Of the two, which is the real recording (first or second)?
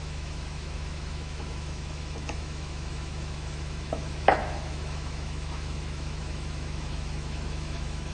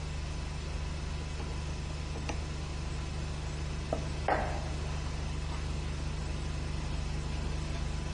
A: second